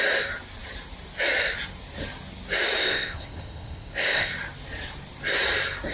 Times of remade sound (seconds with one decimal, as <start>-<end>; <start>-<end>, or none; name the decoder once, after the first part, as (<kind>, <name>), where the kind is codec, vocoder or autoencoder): 2.8-4.3 (codec, ZipCodec)